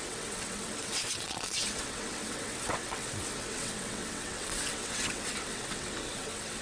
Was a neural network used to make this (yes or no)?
yes